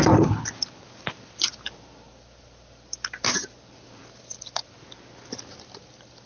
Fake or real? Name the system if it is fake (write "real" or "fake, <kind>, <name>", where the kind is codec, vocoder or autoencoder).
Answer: real